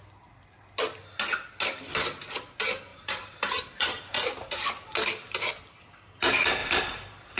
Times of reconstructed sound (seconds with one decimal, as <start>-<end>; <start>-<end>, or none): 2.9-4.5; 6.6-7.4